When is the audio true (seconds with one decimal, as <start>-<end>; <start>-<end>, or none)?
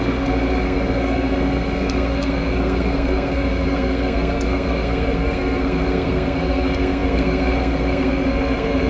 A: none